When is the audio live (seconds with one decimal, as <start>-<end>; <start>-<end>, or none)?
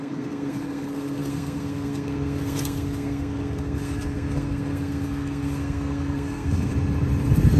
6.7-7.6